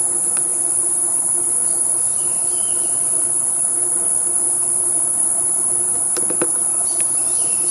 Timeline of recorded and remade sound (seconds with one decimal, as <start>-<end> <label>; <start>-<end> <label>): 0.0-0.5 remade; 0.5-1.1 recorded; 1.1-2.2 remade; 2.2-6.8 recorded; 6.8-7.7 remade